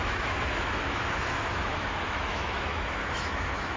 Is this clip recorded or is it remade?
remade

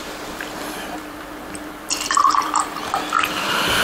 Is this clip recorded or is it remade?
remade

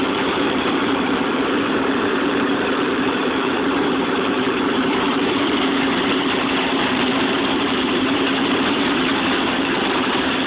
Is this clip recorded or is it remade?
remade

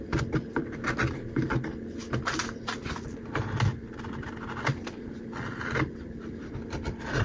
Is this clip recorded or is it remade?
recorded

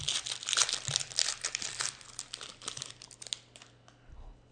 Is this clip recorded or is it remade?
recorded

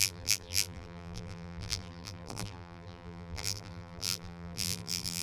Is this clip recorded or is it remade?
remade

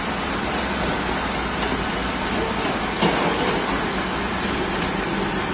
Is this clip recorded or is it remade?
recorded